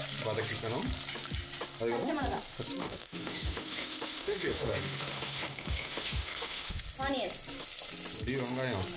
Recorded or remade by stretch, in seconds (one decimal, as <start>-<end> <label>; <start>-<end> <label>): 0.0-2.8 recorded; 2.8-6.8 remade; 6.8-9.0 recorded

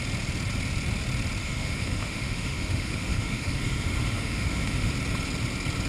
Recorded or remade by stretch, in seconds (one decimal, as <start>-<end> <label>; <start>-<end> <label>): 0.0-1.4 recorded; 1.4-4.9 remade; 4.9-5.9 recorded

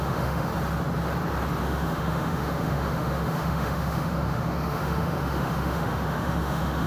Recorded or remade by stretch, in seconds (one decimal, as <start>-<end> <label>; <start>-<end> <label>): 0.0-0.5 remade; 0.5-1.6 recorded; 1.6-6.9 remade

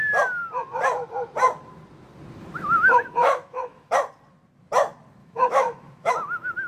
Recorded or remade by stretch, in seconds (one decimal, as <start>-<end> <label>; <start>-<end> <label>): 0.0-3.2 recorded; 3.2-3.9 remade; 3.9-5.2 recorded; 5.2-6.1 remade; 6.1-6.7 recorded